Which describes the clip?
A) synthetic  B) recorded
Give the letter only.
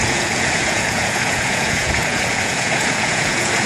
A